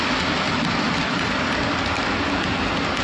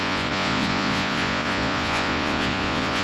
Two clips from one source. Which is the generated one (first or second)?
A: second